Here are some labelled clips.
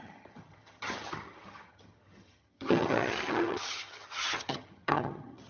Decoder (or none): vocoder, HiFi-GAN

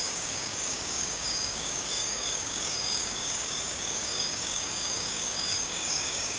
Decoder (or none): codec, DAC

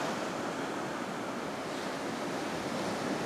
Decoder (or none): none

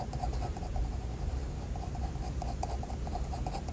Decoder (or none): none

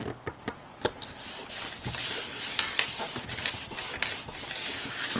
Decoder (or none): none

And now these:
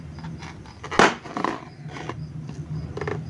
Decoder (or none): none